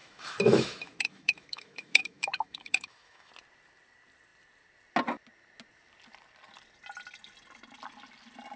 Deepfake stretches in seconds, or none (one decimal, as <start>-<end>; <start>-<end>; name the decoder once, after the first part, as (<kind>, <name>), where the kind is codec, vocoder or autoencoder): 0.0-3.3 (autoencoder, DAC-VAE)